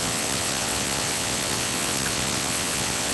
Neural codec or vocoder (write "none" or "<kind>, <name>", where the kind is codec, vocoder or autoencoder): vocoder, WaveNeXt